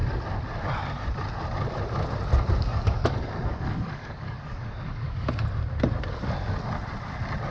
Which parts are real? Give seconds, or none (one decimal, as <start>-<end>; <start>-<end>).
0.0-2.7; 5.3-7.5